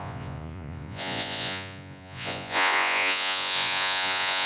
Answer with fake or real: fake